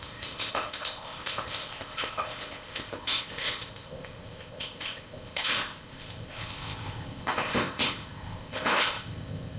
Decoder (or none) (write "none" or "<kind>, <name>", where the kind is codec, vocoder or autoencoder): codec, ZipCodec